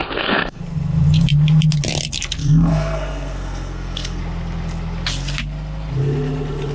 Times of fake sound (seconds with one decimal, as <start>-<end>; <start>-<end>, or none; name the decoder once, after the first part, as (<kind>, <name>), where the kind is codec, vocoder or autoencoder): 0.0-0.6 (codec, SNAC); 2.4-4.2

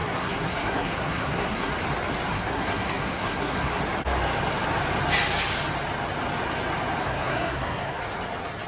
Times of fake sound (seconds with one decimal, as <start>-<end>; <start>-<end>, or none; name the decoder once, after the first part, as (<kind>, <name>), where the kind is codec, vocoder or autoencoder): 0.0-1.7 (codec, SNAC); 2.3-3.8; 7.0-8.0

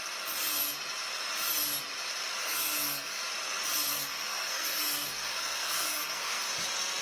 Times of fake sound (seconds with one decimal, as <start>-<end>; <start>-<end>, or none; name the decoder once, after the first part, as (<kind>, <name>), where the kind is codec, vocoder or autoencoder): 2.4-3.2 (codec, SNAC); 3.9-6.5

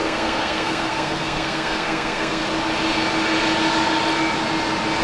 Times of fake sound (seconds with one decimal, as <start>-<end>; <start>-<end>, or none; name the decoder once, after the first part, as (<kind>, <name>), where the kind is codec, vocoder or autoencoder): 0.0-2.4 (codec, SNAC)

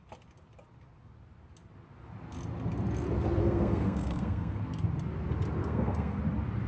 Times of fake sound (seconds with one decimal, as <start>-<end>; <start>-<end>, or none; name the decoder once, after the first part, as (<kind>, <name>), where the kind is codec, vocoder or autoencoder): 3.4-4.6 (codec, SNAC); 5.6-6.2

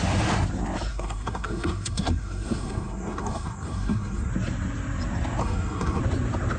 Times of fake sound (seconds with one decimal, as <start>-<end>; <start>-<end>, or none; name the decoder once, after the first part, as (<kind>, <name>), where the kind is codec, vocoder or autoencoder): 0.9-4.3 (codec, SNAC); 5.4-6.0